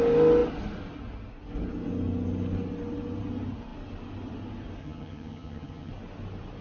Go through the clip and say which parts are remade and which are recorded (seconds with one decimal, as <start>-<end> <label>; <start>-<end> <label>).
0.0-4.8 recorded; 4.8-5.9 remade; 5.9-6.6 recorded